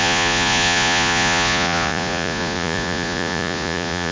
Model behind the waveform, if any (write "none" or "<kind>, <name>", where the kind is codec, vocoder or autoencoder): vocoder, Vocos